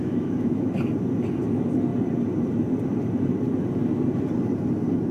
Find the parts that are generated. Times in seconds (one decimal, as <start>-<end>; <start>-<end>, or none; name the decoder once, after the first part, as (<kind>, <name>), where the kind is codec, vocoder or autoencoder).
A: 0.0-0.7 (autoencoder, DAC-VAE)